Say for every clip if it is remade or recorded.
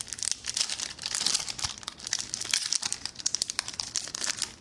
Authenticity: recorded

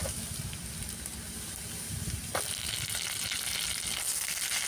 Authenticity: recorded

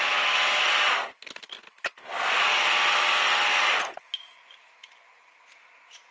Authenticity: recorded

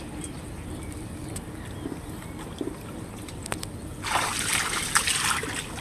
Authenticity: recorded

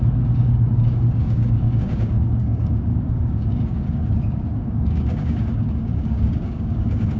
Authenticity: remade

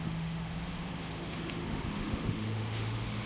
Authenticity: remade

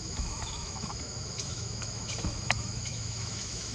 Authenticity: remade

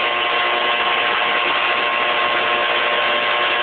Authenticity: recorded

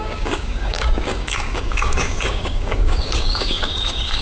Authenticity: remade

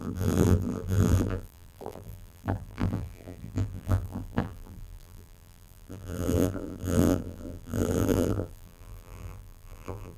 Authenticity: remade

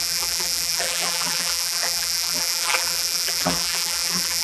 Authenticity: remade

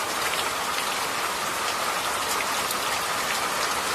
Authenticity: recorded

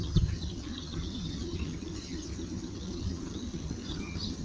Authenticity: remade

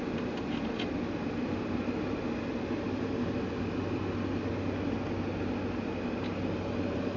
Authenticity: recorded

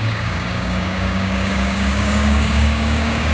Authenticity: remade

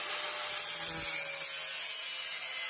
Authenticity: recorded